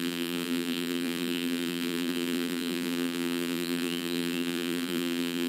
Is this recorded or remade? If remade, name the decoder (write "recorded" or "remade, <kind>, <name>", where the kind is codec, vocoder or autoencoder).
remade, vocoder, BigVGAN v2